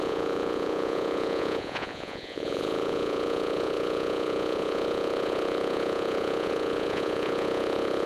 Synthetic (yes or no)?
yes